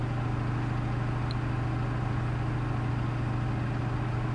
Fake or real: real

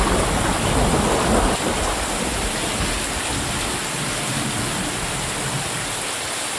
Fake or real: real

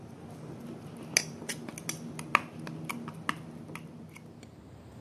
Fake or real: real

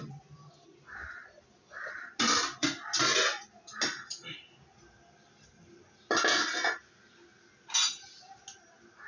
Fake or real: real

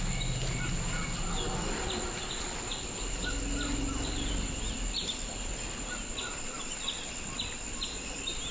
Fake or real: real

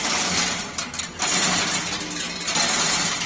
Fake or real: real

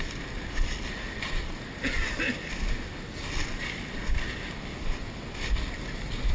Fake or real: real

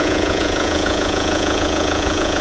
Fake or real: fake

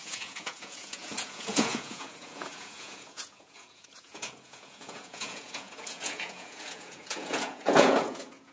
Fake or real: fake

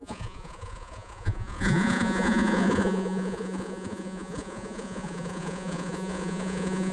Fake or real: fake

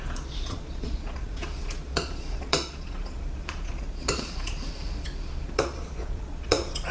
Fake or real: fake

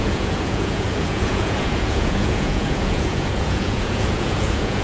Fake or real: fake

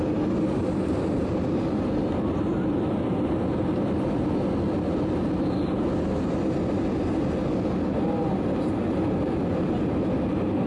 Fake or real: real